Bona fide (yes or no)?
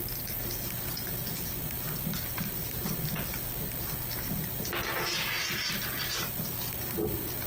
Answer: yes